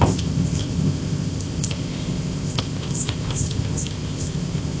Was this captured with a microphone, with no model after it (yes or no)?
no